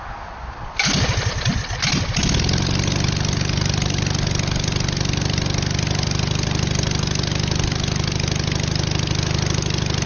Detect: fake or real real